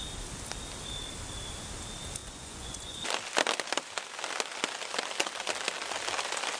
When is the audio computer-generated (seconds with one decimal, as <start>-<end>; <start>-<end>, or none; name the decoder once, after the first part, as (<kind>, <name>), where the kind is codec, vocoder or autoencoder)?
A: 2.2-3.0 (vocoder, Vocos)